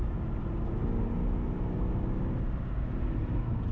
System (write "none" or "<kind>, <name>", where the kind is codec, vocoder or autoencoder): none